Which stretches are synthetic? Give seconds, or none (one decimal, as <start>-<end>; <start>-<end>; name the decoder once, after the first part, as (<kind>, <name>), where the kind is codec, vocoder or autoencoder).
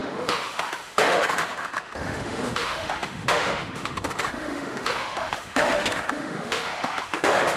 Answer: 0.0-7.6 (autoencoder, DAC-VAE)